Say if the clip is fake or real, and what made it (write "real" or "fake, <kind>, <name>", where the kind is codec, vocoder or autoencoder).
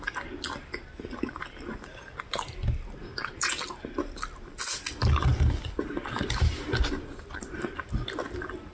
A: real